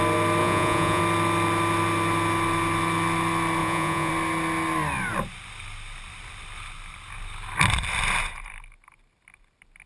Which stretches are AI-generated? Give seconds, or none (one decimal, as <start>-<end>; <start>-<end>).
0.4-1.0; 3.6-4.1